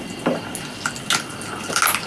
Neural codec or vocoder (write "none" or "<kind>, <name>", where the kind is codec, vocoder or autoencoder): none